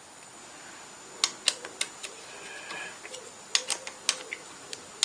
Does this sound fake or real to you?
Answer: real